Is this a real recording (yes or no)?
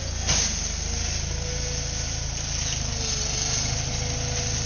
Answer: yes